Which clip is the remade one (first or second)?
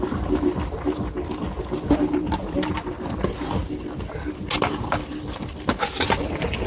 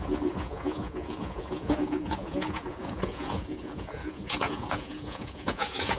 second